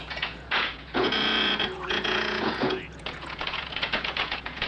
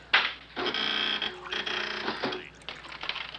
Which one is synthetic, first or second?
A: first